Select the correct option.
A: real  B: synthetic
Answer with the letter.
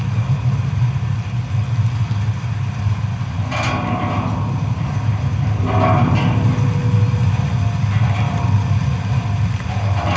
A